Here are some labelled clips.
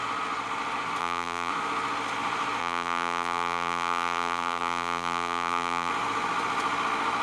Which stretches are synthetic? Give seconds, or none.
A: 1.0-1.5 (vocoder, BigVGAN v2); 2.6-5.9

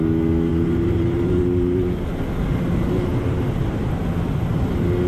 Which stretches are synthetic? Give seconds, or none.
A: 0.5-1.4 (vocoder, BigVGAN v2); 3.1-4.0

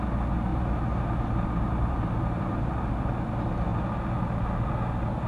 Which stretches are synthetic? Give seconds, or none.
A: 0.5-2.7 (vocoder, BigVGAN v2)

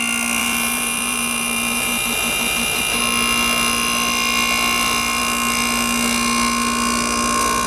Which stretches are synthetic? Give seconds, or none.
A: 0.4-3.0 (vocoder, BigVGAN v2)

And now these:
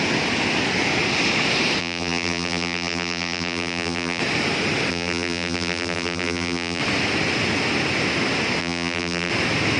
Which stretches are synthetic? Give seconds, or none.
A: 1.8-4.2 (vocoder, BigVGAN v2); 4.9-6.8; 8.6-9.3

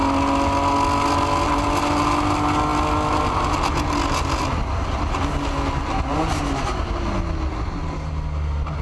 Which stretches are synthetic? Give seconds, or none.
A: none

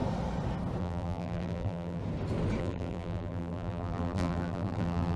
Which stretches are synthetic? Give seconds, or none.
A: 0.8-2.0 (vocoder, BigVGAN v2); 2.6-5.2

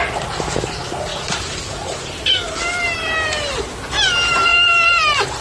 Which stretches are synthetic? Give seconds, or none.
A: 1.1-3.7 (vocoder, BigVGAN v2)